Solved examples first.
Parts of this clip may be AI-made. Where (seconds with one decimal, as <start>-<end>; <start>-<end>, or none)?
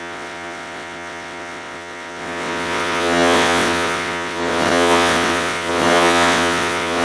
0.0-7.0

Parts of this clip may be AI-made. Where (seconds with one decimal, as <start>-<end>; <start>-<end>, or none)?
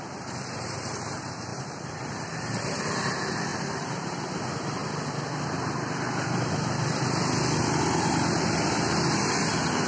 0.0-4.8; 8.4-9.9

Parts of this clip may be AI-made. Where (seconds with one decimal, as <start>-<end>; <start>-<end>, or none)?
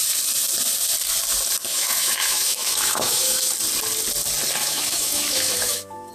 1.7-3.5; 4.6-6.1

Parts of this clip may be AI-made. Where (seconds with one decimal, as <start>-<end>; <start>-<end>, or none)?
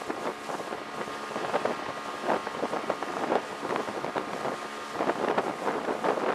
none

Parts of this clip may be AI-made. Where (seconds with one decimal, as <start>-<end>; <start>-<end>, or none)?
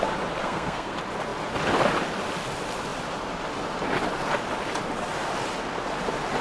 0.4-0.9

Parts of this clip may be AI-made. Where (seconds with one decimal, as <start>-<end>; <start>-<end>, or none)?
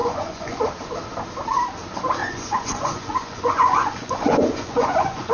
0.0-0.6; 2.2-5.3